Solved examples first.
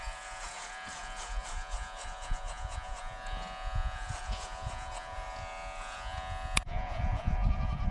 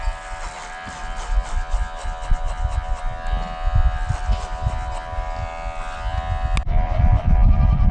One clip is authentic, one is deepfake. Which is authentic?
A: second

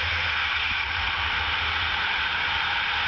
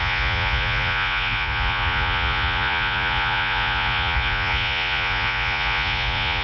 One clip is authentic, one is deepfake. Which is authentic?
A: first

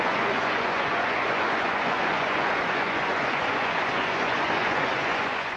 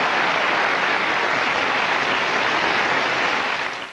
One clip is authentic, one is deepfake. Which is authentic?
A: second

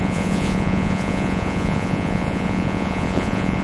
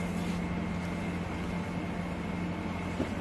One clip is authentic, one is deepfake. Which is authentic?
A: second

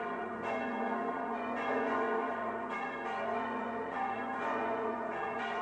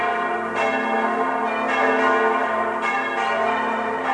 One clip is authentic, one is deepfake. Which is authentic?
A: second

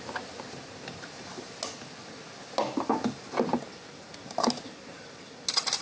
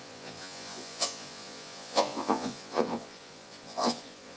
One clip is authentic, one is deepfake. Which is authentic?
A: first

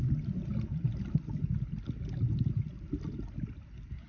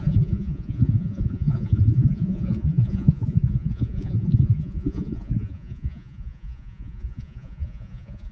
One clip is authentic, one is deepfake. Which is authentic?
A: first